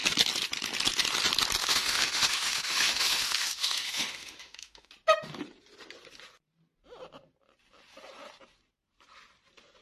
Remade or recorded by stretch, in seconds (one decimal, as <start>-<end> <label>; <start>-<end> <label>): 0.0-1.6 recorded; 1.6-4.9 remade; 4.9-9.8 recorded